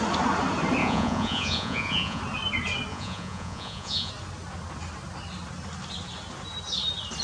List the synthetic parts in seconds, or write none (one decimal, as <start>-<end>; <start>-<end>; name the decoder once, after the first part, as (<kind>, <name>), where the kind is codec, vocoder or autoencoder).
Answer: 0.8-2.2 (vocoder, Vocos); 2.9-4.1